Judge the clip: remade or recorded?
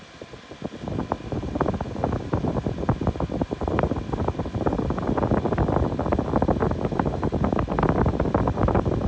recorded